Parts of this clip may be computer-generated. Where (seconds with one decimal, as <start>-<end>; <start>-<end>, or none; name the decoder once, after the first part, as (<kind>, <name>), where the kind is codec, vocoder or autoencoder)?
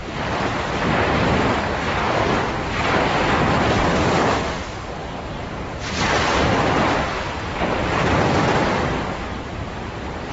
3.6-10.3 (vocoder, BigVGAN v2)